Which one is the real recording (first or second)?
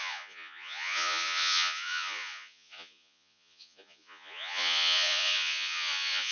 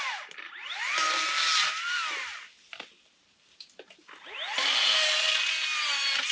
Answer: second